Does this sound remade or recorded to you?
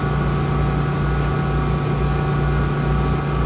recorded